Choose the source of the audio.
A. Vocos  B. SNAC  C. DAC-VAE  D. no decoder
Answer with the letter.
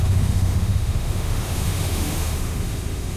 C